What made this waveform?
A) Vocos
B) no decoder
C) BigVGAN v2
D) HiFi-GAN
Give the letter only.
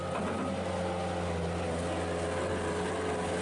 B